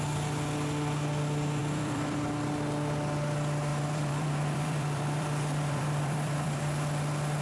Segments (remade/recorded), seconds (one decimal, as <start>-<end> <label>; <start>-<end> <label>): 0.0-1.6 recorded; 1.6-2.3 remade; 2.3-3.7 recorded; 3.7-6.6 remade; 6.6-7.4 recorded